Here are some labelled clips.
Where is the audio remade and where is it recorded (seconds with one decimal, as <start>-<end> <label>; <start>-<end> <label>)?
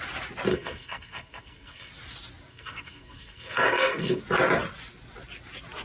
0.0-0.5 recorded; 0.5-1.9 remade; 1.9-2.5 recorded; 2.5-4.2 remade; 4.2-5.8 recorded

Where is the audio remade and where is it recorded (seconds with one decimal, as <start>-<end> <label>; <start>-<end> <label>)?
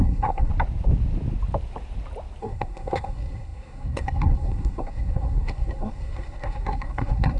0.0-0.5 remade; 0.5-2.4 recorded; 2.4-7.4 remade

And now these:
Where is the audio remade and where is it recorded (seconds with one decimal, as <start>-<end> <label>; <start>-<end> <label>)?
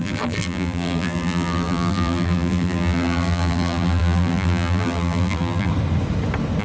0.0-5.7 remade; 5.7-6.6 recorded